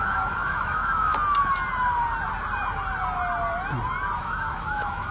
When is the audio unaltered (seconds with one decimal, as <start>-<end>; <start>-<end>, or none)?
1.1-4.2